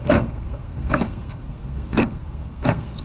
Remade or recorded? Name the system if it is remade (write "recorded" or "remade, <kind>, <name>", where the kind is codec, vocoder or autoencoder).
remade, codec, SNAC